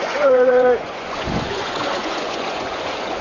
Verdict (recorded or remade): remade